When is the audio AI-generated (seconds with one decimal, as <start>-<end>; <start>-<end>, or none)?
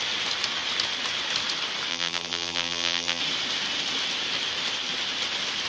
1.9-3.2